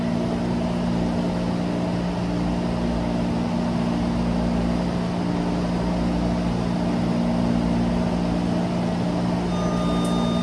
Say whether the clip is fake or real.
real